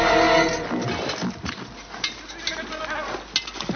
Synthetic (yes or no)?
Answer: no